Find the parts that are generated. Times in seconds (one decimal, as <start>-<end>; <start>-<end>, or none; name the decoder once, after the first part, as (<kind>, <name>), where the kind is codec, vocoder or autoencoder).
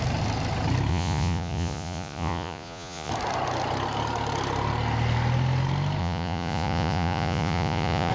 0.9-3.1 (vocoder, Vocos); 6.0-8.1